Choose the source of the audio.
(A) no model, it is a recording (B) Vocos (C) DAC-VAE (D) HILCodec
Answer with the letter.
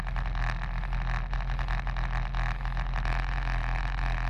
A